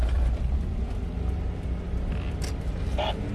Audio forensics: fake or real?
real